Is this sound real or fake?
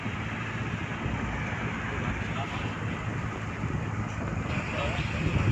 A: real